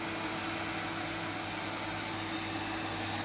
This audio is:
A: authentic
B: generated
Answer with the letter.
A